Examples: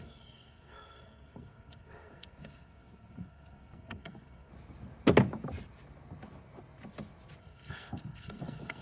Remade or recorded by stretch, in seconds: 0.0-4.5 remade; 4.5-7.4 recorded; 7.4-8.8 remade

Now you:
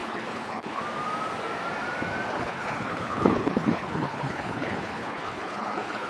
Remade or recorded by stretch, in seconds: 0.0-0.8 remade; 0.8-2.3 recorded; 2.3-6.1 remade

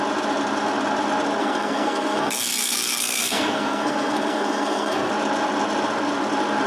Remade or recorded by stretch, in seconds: 0.0-1.4 recorded; 1.4-5.1 remade; 5.1-6.7 recorded

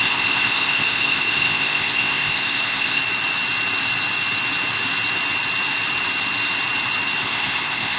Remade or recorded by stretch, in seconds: 0.0-3.0 remade; 3.0-7.2 recorded; 7.2-8.0 remade

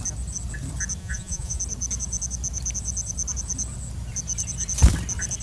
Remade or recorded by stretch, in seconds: 0.0-1.0 recorded; 1.0-1.6 remade; 1.6-5.4 recorded